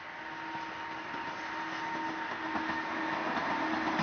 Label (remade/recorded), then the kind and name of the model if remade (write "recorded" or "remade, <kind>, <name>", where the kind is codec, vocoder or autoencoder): recorded